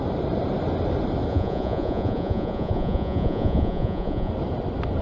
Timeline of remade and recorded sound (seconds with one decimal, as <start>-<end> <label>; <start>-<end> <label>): 0.0-1.3 recorded; 1.3-4.3 remade; 4.3-5.0 recorded